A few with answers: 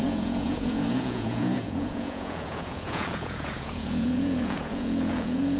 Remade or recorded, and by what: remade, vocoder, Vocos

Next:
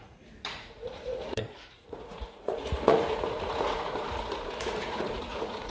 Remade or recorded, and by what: remade, vocoder, Vocos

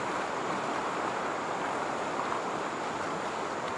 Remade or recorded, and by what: recorded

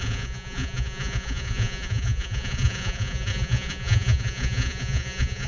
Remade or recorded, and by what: remade, vocoder, Vocos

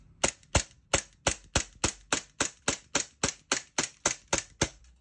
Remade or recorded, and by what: recorded